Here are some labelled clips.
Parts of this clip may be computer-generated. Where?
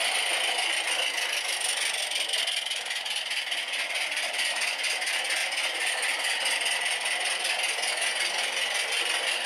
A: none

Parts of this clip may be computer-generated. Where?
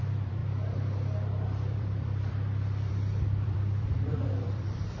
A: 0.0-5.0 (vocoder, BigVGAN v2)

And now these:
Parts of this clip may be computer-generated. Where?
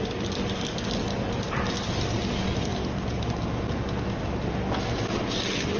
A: 0.0-2.7 (vocoder, BigVGAN v2)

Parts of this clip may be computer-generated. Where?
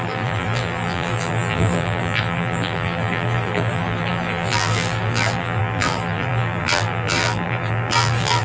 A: 0.0-8.4 (vocoder, BigVGAN v2)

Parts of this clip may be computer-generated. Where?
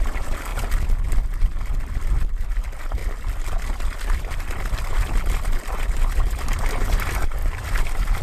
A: 3.0-6.0 (vocoder, BigVGAN v2); 7.4-8.2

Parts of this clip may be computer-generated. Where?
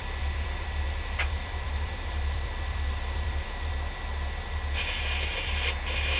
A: 0.0-3.7 (vocoder, BigVGAN v2)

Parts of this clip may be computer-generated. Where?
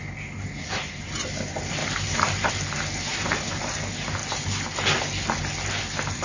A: 1.8-2.5 (vocoder, BigVGAN v2); 3.1-3.7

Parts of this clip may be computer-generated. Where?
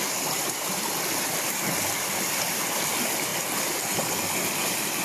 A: 0.0-3.3 (vocoder, BigVGAN v2)